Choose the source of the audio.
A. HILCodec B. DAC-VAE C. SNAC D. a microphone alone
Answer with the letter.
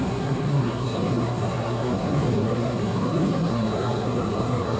C